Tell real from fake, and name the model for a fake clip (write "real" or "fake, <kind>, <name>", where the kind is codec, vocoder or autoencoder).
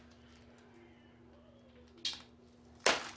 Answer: real